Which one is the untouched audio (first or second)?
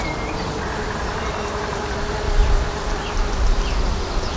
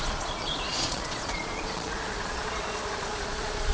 first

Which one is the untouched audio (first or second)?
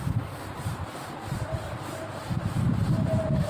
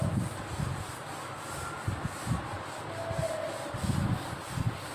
second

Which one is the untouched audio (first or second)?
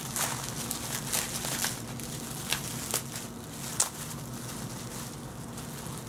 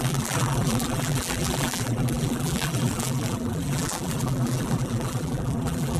first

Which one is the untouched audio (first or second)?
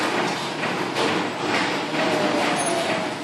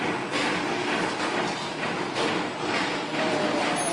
second